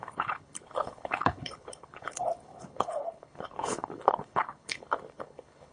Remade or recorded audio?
remade